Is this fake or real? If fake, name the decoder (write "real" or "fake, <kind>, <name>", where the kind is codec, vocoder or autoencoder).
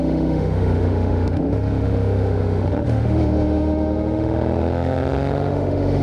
fake, autoencoder, DAC-VAE